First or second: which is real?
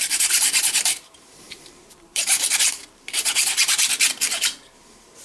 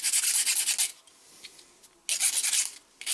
second